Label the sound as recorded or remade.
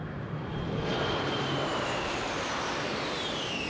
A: remade